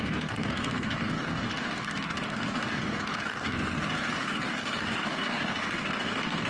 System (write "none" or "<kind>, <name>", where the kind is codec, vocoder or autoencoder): codec, DAC